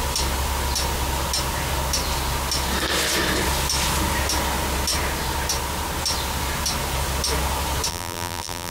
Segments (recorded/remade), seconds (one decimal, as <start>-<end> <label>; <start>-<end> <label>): 0.0-7.9 recorded; 7.9-8.7 remade